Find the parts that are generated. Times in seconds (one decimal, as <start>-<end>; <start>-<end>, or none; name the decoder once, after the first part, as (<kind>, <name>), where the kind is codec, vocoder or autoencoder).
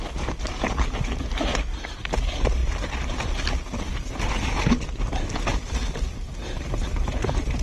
0.0-2.6 (vocoder, BigVGAN v2); 6.9-7.6